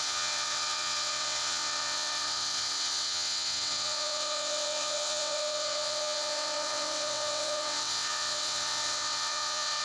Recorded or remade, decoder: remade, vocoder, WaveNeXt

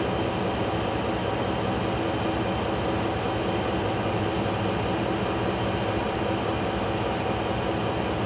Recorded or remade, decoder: recorded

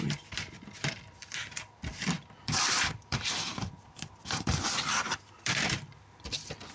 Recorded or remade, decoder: remade, vocoder, BigVGAN v2